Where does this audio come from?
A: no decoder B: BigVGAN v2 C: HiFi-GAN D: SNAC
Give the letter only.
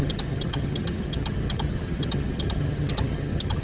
C